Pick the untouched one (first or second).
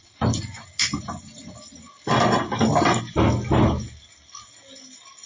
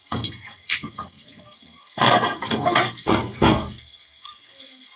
first